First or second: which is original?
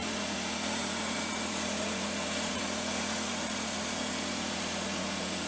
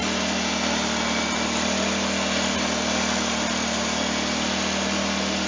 second